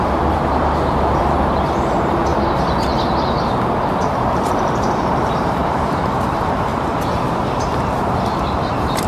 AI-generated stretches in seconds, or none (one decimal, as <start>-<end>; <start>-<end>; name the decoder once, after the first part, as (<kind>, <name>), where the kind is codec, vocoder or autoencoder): 0.0-2.3 (vocoder, BigVGAN v2); 3.7-9.1